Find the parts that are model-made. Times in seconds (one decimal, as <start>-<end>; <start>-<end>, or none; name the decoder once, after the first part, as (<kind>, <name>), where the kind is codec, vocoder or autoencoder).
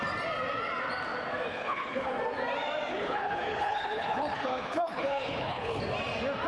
1.5-2.1 (codec, HILCodec); 2.9-5.8